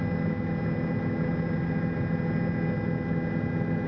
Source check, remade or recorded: recorded